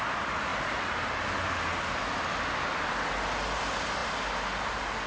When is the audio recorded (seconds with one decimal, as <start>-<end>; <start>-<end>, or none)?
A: 0.0-5.1